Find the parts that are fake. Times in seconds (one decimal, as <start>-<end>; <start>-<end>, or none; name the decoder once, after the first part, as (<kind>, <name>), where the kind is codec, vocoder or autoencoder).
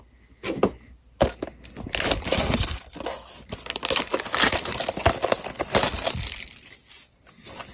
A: none